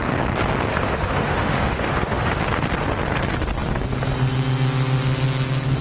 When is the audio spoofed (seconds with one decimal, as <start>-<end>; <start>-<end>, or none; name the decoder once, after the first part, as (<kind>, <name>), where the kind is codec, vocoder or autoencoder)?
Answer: 0.7-2.4 (autoencoder, DAC-VAE)